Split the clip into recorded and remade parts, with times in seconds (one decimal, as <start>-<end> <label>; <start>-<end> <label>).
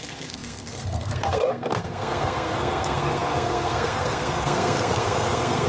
0.0-5.7 remade